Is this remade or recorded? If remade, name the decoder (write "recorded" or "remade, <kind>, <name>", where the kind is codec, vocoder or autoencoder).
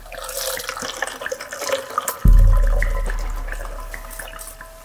recorded